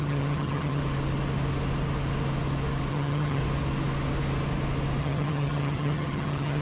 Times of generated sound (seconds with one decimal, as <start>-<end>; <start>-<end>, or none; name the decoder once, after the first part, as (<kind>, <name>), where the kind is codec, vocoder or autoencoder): 0.0-0.8 (vocoder, HiFi-GAN); 2.9-3.4; 5.0-6.6